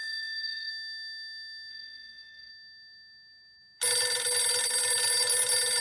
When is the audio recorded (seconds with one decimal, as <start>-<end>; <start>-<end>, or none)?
0.7-1.7; 2.5-5.8